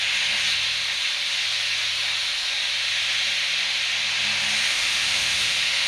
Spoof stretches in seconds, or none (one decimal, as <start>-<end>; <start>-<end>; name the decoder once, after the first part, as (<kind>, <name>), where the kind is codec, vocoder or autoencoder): 4.7-5.9 (autoencoder, DAC-VAE)